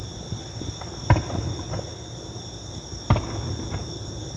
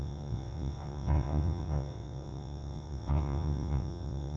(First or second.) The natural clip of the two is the first